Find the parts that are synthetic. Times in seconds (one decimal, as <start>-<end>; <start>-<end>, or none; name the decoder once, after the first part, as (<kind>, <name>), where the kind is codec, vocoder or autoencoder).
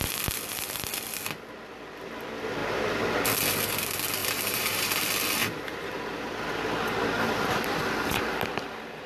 4.2-5.0 (vocoder, BigVGAN v2); 5.4-6.4